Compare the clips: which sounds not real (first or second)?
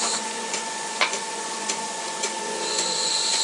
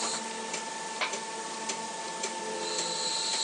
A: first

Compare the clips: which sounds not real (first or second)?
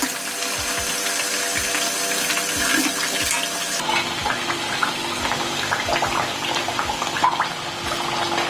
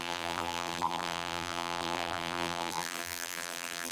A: second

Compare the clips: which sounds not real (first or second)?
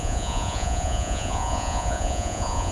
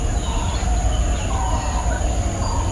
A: first